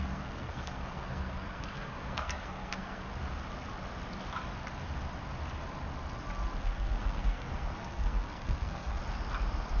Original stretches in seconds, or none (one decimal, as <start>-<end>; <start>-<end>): 3.1-6.6; 9.0-9.8